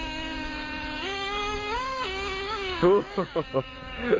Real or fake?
fake